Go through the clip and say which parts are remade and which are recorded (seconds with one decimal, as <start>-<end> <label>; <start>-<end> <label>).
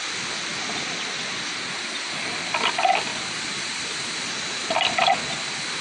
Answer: 0.0-3.1 recorded; 3.1-4.3 remade; 4.3-5.8 recorded